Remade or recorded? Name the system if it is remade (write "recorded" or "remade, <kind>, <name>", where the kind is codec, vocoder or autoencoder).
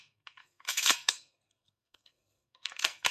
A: remade, codec, SNAC